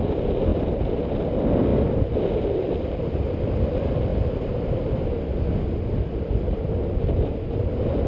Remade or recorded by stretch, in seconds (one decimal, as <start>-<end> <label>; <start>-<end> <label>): 0.0-8.1 remade